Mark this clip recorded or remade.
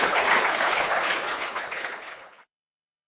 remade